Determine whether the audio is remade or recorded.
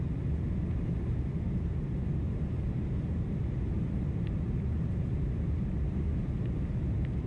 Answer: remade